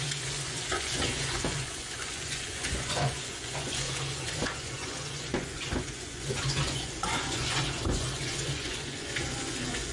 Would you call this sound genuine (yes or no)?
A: no